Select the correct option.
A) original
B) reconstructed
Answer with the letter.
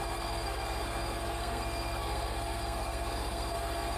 B